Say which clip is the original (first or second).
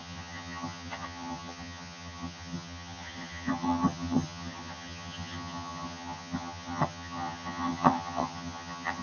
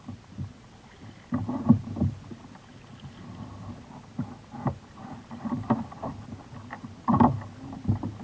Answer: second